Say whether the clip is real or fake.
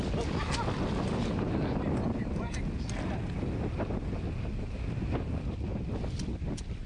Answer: real